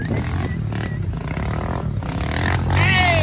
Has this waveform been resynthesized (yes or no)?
no